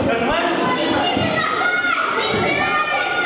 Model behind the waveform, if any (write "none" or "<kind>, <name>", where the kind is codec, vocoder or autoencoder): none